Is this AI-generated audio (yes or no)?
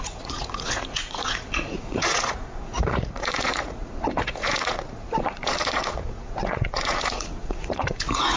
yes